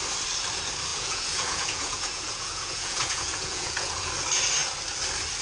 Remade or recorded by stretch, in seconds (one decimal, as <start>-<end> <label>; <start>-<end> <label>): 0.0-0.9 recorded; 0.9-4.1 remade; 4.1-5.4 recorded